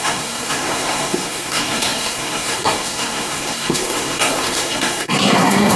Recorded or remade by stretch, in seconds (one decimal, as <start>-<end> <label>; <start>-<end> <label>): 0.0-5.8 remade